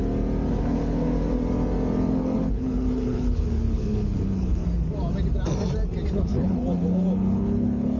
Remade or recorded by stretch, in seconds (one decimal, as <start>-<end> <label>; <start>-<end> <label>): 0.0-0.5 recorded; 0.5-1.1 remade; 1.1-2.1 recorded; 2.1-4.6 remade; 4.6-6.1 recorded; 6.1-8.0 remade